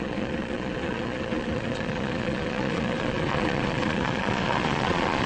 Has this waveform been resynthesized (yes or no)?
yes